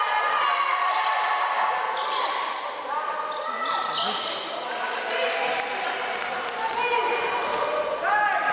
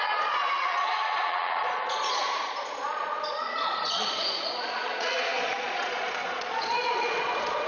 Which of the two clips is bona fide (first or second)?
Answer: first